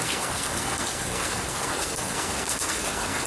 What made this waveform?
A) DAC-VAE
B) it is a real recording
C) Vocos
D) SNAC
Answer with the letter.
D